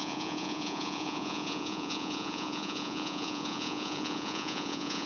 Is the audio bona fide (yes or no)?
no